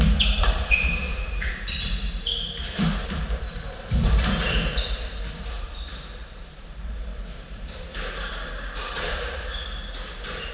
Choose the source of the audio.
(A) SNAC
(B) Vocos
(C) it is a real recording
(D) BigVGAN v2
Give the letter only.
D